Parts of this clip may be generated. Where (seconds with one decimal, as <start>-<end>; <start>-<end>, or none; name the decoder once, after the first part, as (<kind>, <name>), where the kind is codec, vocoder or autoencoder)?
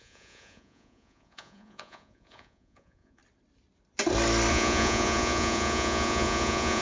0.0-3.2 (vocoder, Vocos); 4.5-6.8